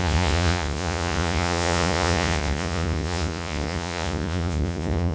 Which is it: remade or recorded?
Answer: remade